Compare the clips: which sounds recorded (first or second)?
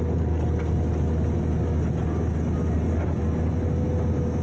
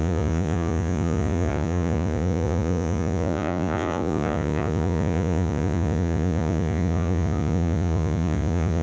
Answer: first